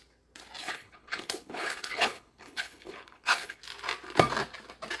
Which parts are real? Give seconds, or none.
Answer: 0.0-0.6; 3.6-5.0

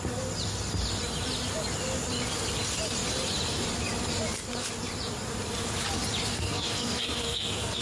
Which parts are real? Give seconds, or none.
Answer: 0.0-6.3

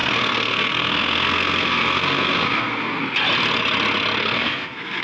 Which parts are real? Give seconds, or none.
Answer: 3.0-4.2

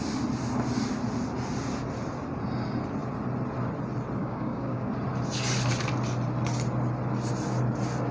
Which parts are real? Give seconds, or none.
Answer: 0.0-4.2; 4.9-8.1